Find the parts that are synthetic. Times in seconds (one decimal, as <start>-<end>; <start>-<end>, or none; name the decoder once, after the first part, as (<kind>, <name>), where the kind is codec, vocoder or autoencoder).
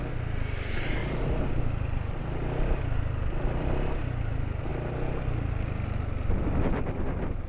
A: none